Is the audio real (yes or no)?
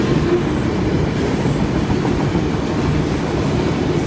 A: yes